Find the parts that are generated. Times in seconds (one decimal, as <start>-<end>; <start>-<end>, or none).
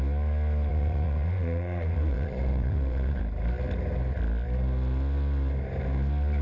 0.7-3.2